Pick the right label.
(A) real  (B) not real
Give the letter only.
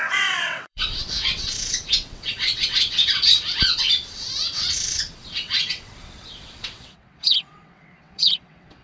B